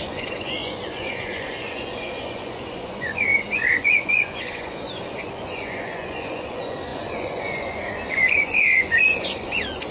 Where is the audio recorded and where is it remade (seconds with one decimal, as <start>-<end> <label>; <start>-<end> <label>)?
0.0-9.9 remade